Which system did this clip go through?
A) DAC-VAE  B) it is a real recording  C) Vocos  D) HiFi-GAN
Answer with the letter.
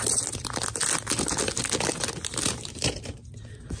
B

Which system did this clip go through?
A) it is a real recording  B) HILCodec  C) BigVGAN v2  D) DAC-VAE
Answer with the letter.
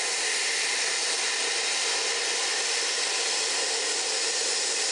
A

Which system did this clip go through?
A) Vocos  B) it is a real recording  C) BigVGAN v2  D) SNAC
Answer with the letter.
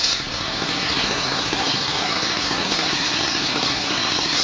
D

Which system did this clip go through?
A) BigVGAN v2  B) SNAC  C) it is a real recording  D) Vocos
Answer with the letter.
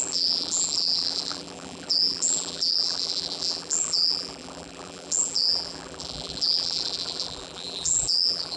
A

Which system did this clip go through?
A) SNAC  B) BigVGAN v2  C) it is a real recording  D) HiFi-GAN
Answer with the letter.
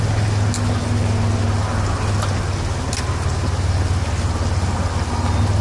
C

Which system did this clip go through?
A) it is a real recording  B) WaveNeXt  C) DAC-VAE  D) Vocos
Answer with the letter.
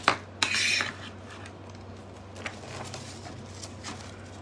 A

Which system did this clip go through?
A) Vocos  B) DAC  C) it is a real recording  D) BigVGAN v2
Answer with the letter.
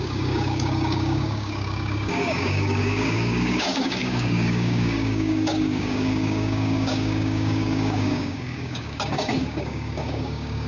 B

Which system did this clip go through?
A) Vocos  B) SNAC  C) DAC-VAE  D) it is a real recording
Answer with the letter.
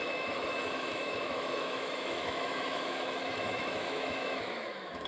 C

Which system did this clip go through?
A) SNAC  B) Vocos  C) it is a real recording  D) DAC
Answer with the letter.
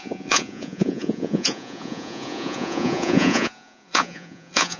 B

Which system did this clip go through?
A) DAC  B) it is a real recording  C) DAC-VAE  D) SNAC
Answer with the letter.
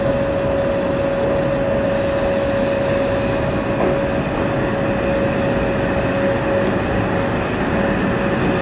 B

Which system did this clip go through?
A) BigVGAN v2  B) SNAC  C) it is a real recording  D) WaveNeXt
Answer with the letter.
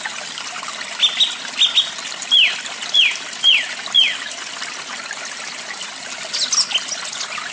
C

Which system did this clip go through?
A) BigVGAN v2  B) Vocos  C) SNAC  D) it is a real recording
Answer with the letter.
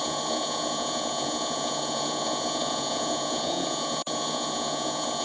B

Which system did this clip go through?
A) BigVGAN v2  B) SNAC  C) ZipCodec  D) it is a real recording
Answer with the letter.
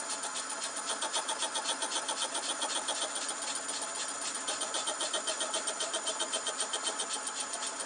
D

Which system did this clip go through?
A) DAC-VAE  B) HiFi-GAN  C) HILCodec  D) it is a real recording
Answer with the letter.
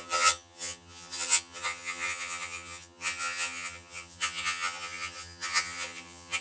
B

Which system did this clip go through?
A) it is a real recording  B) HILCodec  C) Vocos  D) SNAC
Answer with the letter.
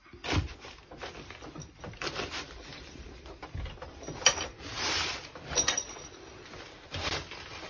A